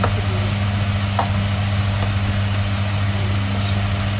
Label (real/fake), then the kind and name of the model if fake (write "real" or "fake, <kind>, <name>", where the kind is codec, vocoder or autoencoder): real